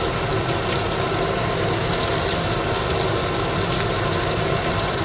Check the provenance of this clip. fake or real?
real